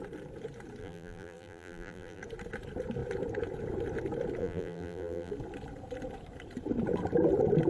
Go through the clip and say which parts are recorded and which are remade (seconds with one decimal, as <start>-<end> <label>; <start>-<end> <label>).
0.0-0.8 recorded; 0.8-2.2 remade; 2.2-4.4 recorded; 4.4-5.3 remade; 5.3-7.7 recorded